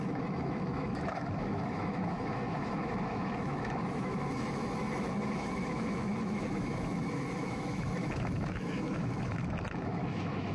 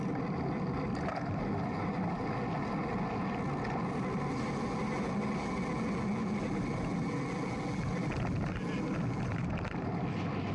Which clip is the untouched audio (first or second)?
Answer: second